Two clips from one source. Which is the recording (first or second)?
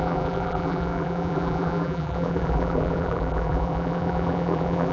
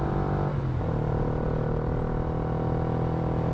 second